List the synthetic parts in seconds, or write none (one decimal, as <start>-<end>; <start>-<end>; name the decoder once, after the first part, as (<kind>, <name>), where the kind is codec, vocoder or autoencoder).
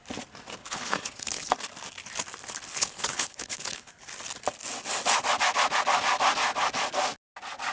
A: 0.6-1.5 (codec, HILCodec); 2.7-3.9